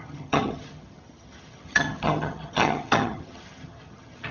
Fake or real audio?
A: fake